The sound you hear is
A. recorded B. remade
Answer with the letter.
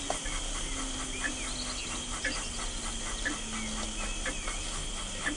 A